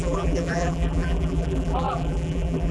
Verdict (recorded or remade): remade